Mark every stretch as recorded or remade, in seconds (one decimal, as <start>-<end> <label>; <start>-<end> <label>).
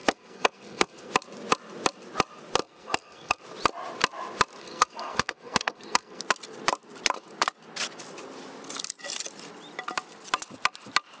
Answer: 0.0-1.1 remade; 1.1-2.6 recorded; 2.6-3.4 remade; 3.4-4.6 recorded; 4.6-6.2 remade; 6.2-11.2 recorded